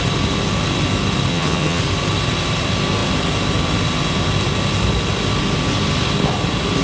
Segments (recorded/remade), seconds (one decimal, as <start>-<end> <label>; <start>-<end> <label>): 0.0-1.3 recorded; 1.3-1.8 remade; 1.8-6.8 recorded